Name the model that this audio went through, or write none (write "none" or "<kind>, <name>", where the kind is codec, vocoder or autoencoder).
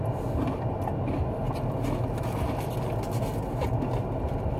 none